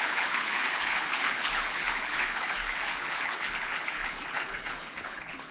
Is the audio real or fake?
fake